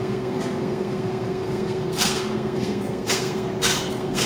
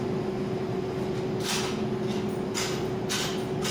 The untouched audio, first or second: second